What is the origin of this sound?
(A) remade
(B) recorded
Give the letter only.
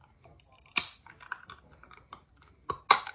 B